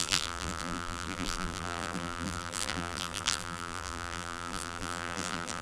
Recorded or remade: remade